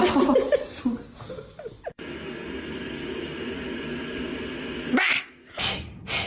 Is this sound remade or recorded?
recorded